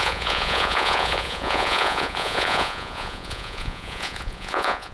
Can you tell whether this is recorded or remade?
remade